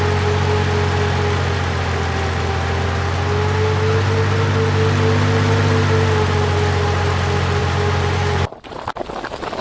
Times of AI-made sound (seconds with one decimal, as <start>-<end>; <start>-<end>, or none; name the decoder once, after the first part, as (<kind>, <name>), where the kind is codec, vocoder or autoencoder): 7.6-8.8 (vocoder, BigVGAN v2)